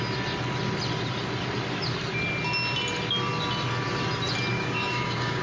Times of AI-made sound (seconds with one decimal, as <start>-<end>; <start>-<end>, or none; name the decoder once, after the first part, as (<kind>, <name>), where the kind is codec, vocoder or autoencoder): 4.5-5.4 (codec, DAC)